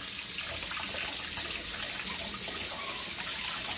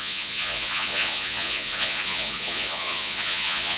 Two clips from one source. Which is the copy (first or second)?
second